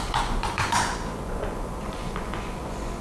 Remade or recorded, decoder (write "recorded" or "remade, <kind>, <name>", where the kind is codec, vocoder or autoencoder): remade, vocoder, Vocos